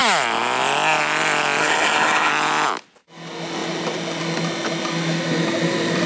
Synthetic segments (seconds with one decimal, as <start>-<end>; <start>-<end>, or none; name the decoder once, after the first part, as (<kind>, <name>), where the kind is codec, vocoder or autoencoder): 1.6-2.3 (codec, HILCodec)